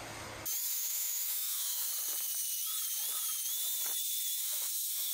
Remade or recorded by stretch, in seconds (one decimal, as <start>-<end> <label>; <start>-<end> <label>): 0.0-0.7 recorded; 0.7-1.9 remade; 1.9-4.4 recorded; 4.4-5.1 remade